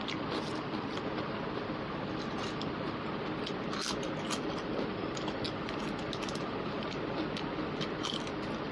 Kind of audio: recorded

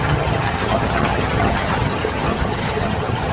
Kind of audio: remade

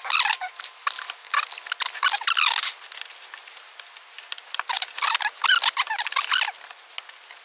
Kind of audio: recorded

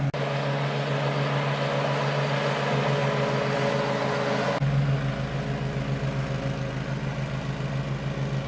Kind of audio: recorded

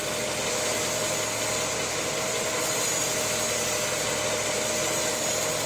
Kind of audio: recorded